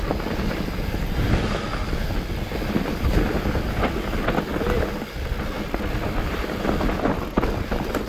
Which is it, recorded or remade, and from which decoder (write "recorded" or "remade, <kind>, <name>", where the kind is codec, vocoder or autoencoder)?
recorded